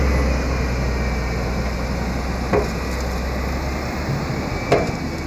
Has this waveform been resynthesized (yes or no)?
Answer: no